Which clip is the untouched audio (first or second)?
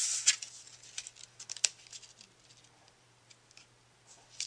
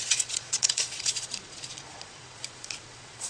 first